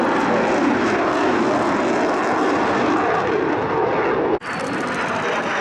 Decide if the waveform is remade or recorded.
recorded